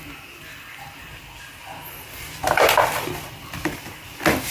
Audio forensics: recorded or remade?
recorded